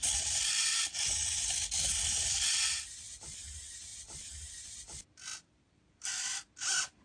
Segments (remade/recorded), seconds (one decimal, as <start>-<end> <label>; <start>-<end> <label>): 0.0-5.3 recorded; 5.3-6.4 remade; 6.4-7.0 recorded